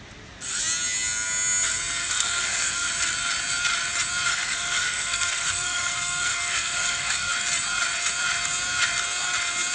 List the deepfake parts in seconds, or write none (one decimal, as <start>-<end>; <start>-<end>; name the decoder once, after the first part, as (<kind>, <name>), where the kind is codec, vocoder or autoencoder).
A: 2.0-2.9 (codec, SNAC); 4.3-7.3